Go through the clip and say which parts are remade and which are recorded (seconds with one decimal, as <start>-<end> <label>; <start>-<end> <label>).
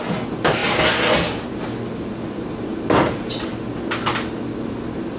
0.0-5.2 recorded